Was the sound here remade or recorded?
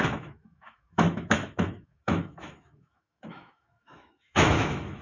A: remade